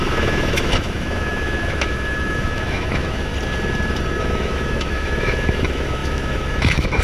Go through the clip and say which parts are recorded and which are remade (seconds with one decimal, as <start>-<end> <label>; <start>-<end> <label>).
0.0-3.3 remade; 3.3-4.2 recorded; 4.2-7.0 remade